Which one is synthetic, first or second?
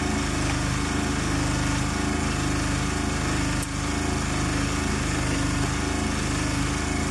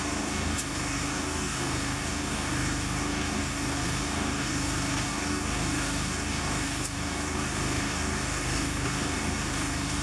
second